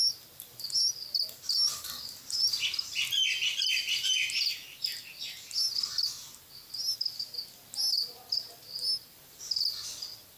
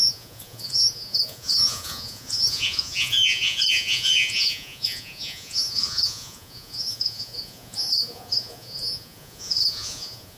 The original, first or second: first